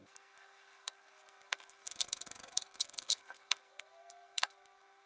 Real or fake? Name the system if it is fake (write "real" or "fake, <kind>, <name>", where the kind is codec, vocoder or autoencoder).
fake, codec, SNAC